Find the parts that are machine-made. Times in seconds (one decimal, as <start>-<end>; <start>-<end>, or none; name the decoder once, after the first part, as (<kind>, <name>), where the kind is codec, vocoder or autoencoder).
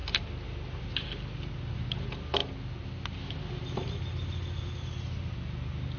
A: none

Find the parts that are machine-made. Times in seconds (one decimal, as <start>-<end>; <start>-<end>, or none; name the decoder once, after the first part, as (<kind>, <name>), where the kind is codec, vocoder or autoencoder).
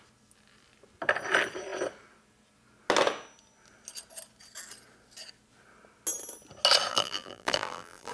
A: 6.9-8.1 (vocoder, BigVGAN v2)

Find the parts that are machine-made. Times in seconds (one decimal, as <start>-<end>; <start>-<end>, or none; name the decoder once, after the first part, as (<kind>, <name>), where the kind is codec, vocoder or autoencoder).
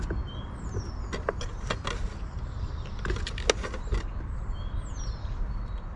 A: none